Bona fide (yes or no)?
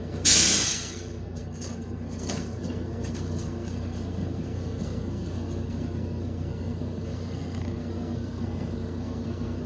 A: no